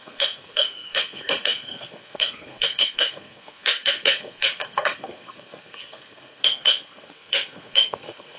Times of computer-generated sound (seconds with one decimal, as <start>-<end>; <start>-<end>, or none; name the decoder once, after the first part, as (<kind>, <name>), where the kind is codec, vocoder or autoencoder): 0.0-8.4 (codec, SNAC)